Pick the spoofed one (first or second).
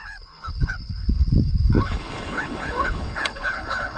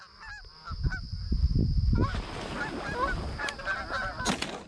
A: first